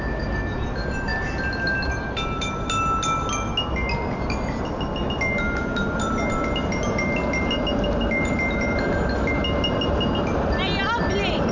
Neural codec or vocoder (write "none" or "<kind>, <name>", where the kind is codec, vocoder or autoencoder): none